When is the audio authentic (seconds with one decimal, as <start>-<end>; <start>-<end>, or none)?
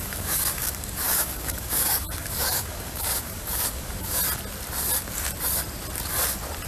4.2-6.7